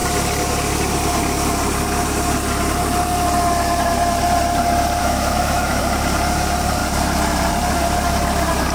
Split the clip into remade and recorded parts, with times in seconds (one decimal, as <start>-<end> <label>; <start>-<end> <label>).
0.0-5.0 recorded; 5.0-5.8 remade; 5.8-8.7 recorded